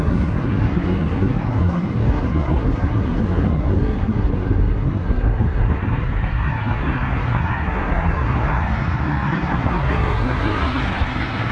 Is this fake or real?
fake